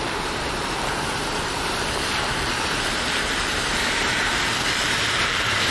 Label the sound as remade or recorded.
remade